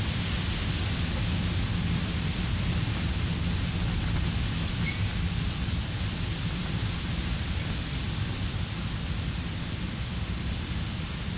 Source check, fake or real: real